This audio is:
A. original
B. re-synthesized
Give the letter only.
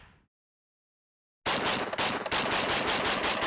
A